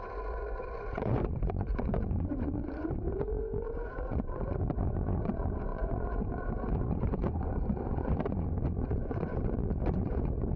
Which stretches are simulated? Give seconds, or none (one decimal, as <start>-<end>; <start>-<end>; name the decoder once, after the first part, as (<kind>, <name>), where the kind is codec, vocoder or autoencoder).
0.0-10.6 (vocoder, Vocos)